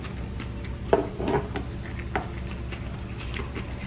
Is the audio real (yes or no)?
yes